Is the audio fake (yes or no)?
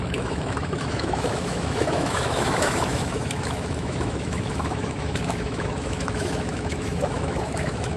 yes